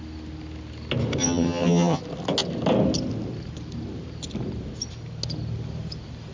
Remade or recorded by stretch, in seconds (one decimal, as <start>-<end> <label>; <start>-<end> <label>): 0.0-1.2 recorded; 1.2-2.0 remade; 2.0-6.3 recorded